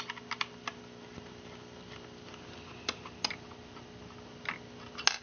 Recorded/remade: recorded